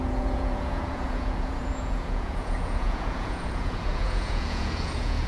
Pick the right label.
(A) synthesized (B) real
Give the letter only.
A